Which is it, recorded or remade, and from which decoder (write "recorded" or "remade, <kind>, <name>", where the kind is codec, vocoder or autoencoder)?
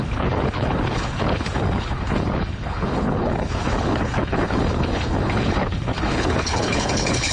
remade, codec, HILCodec